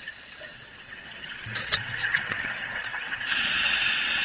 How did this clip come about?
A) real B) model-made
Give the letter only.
B